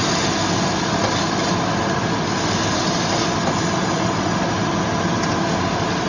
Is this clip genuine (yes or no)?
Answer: yes